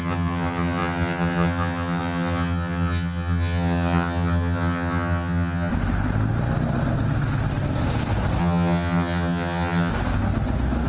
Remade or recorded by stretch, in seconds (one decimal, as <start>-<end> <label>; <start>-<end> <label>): 0.0-5.7 remade; 5.7-8.4 recorded; 8.4-9.9 remade; 9.9-10.9 recorded